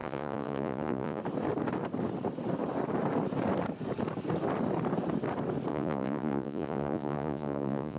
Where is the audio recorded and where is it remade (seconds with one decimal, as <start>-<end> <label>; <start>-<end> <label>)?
0.0-1.2 remade; 1.2-5.7 recorded; 5.7-8.0 remade